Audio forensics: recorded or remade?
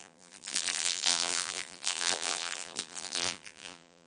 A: remade